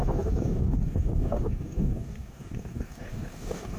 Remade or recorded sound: remade